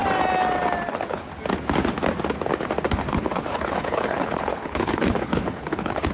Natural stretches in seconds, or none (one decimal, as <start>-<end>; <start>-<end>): 0.0-0.9; 1.3-3.1